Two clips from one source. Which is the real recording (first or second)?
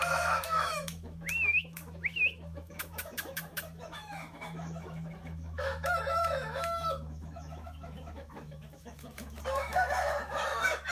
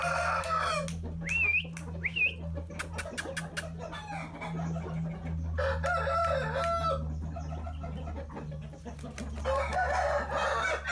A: second